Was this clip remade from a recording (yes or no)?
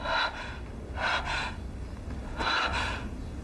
no